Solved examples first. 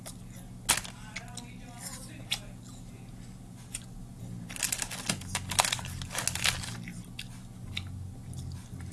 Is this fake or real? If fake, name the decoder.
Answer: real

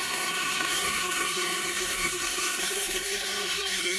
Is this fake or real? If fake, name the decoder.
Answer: fake, codec, SNAC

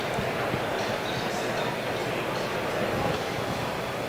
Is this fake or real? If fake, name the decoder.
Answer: real